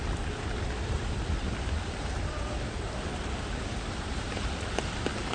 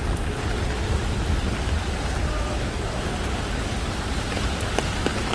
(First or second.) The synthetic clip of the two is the first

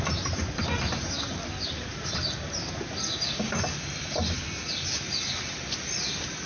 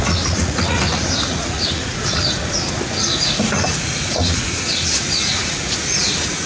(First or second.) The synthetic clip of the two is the second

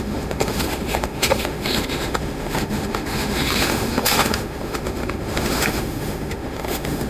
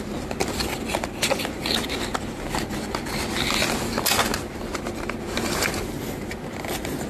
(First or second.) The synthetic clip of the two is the first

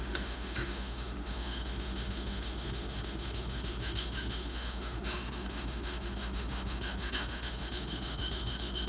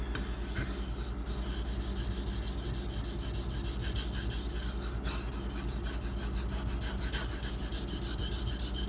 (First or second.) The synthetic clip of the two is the first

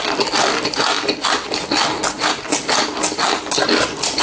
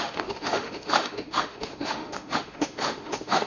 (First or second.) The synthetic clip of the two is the second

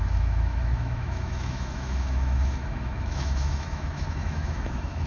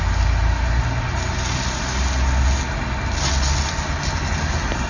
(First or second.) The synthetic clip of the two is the first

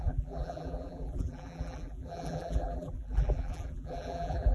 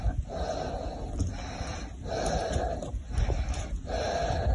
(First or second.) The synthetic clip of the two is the first